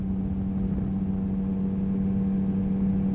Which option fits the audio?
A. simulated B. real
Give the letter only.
B